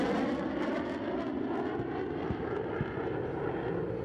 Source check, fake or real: real